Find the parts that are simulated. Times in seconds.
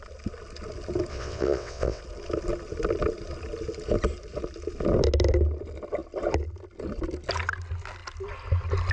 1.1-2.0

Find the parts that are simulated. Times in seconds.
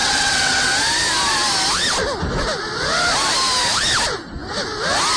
0.0-0.7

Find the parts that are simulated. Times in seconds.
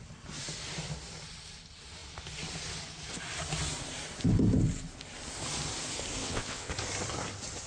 6.2-6.7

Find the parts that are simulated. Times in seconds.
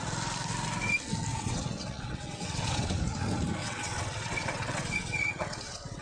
1.3-3.0; 3.6-6.0